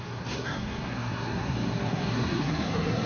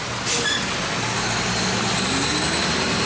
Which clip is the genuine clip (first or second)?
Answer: second